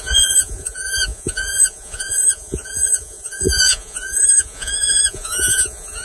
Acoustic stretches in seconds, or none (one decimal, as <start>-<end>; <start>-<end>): none